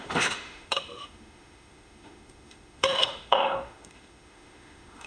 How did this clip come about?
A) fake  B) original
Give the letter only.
A